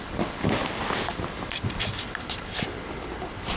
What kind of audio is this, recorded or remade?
remade